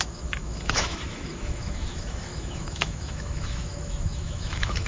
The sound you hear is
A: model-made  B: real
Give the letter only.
A